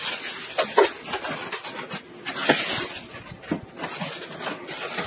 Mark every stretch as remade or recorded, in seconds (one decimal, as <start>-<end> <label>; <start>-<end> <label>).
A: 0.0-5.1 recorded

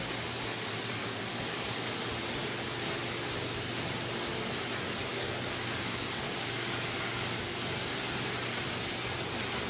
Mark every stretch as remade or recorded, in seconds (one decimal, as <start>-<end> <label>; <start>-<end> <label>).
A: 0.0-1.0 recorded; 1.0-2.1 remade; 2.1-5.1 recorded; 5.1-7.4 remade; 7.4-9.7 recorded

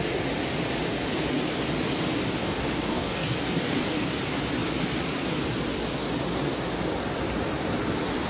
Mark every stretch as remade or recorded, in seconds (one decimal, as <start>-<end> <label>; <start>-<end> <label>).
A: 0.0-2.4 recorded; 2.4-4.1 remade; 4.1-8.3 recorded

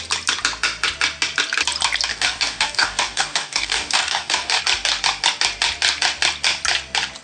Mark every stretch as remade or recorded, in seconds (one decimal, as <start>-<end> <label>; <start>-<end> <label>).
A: 0.0-2.1 recorded; 2.1-4.6 remade; 4.6-7.2 recorded

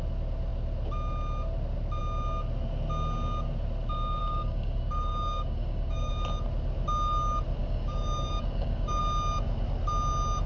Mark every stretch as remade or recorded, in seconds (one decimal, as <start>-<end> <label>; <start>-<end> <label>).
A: 0.0-4.2 recorded; 4.2-6.1 remade; 6.1-7.6 recorded; 7.6-9.0 remade; 9.0-10.5 recorded

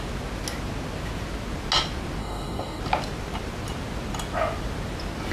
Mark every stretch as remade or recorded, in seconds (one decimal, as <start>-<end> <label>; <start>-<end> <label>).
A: 0.0-2.2 recorded; 2.2-2.8 remade; 2.8-5.3 recorded

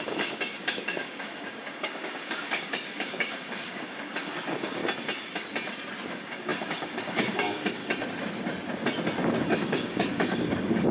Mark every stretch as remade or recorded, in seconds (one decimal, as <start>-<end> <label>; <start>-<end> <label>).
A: 0.0-4.8 remade; 4.8-6.1 recorded; 6.1-7.8 remade; 7.8-9.4 recorded; 9.4-10.9 remade